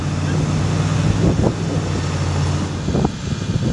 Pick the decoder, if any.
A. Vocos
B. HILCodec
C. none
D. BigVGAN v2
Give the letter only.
C